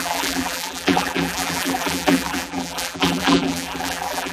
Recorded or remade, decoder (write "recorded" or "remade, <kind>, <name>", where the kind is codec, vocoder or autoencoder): remade, vocoder, BigVGAN v2